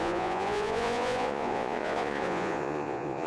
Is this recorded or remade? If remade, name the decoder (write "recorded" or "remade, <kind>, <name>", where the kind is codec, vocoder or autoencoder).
remade, vocoder, Vocos